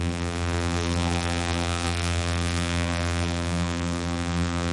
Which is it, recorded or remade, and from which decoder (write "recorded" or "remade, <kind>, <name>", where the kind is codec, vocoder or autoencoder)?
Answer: remade, vocoder, BigVGAN v2